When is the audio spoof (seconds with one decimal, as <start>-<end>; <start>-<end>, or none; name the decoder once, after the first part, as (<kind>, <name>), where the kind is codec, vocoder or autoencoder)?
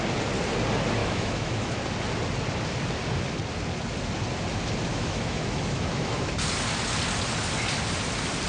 1.0-1.8 (autoencoder, DAC-VAE); 4.9-6.3